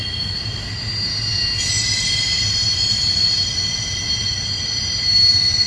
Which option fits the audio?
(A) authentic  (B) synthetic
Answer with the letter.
A